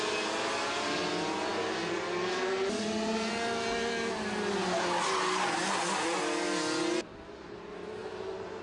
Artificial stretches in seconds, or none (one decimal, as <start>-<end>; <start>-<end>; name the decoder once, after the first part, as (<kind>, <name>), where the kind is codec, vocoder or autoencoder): none

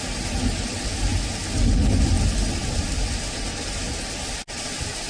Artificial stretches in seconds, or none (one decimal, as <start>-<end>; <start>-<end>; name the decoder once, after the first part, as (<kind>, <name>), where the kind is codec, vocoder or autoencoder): none

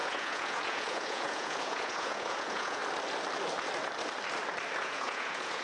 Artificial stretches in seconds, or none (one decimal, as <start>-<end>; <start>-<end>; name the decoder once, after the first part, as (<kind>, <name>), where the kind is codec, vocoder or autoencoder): 0.0-2.8 (vocoder, Vocos); 4.8-5.6

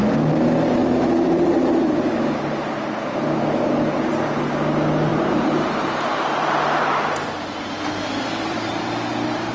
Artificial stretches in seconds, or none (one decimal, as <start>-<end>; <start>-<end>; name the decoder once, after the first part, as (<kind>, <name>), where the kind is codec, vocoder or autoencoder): 0.8-2.7 (vocoder, BigVGAN v2); 5.1-9.5

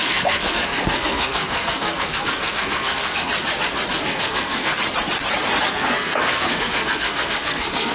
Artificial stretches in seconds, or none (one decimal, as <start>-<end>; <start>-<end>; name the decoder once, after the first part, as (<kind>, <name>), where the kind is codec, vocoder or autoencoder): 0.0-3.3 (codec, SNAC); 3.9-4.7; 5.7-7.9

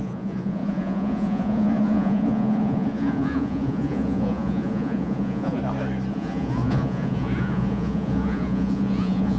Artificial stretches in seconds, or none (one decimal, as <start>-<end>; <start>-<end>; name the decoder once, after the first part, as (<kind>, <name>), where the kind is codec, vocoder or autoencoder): 0.0-5.6 (vocoder, Vocos); 6.1-9.4